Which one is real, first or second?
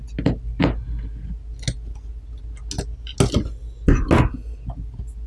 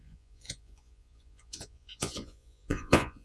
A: first